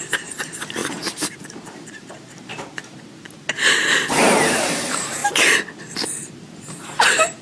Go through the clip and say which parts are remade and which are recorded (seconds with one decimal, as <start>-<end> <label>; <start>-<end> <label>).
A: 0.0-2.5 remade; 2.5-3.8 recorded; 3.8-5.2 remade; 5.2-6.3 recorded; 6.3-7.4 remade